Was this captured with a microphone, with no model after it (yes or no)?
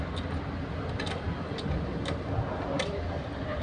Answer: yes